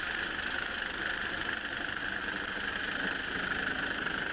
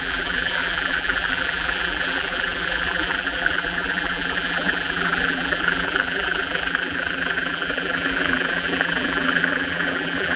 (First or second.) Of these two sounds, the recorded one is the first